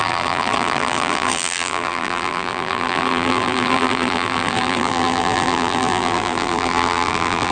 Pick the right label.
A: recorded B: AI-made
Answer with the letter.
B